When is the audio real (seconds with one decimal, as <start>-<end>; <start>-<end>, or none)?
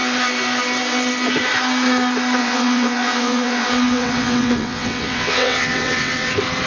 0.0-2.4; 6.3-6.7